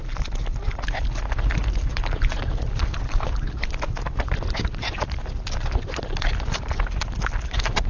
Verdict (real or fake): real